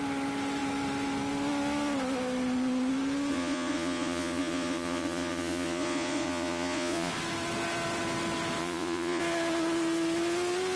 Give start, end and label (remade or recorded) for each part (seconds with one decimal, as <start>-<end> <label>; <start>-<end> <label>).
0.0-3.3 recorded; 3.3-7.1 remade; 7.1-8.6 recorded; 8.6-9.2 remade; 9.2-10.8 recorded